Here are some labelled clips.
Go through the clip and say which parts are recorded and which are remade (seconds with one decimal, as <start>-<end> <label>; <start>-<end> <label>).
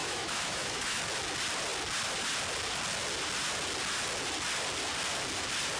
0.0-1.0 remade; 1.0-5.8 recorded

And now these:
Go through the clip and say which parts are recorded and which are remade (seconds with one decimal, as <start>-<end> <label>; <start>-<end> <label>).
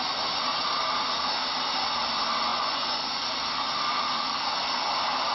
0.0-2.5 recorded; 2.5-3.2 remade; 3.2-5.3 recorded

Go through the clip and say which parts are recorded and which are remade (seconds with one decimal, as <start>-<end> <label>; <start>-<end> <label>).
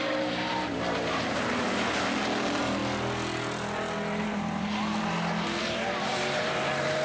0.0-2.8 remade; 2.8-4.2 recorded; 4.2-4.7 remade; 4.7-5.6 recorded; 5.6-7.0 remade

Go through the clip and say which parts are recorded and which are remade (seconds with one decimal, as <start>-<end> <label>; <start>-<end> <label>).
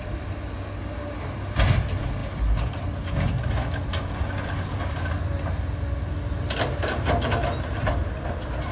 0.0-8.7 recorded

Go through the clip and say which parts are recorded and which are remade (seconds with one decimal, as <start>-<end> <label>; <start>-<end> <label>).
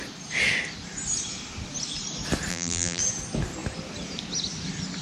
0.0-2.5 recorded; 2.5-3.0 remade; 3.0-5.0 recorded